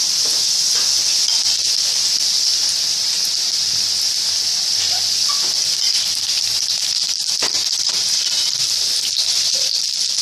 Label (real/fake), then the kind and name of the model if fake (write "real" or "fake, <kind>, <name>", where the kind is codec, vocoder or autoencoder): real